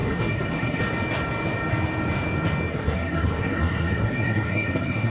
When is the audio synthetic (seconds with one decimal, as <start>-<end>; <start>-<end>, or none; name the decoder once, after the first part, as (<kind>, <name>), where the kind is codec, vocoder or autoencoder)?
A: 0.0-0.8 (codec, SNAC); 2.7-5.1